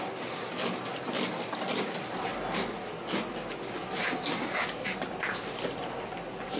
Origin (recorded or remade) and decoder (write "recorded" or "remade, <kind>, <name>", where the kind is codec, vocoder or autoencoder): recorded